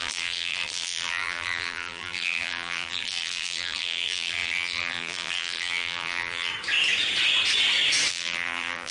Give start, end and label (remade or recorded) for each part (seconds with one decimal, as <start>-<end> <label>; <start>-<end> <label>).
0.0-6.5 remade; 6.5-8.1 recorded; 8.1-8.9 remade